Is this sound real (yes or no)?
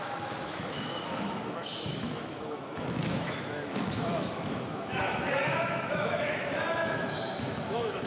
no